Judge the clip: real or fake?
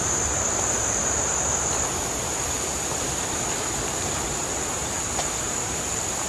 real